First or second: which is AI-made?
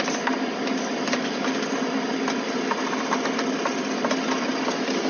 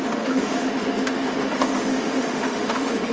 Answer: second